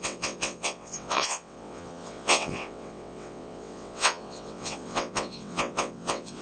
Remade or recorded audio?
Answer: remade